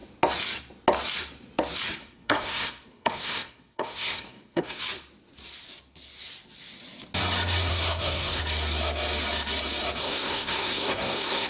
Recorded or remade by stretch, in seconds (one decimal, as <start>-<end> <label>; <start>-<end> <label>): 0.0-2.0 recorded; 2.0-4.8 remade; 4.8-7.7 recorded; 7.7-8.4 remade; 8.4-10.0 recorded; 10.0-11.5 remade